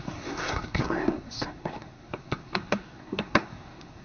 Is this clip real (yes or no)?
no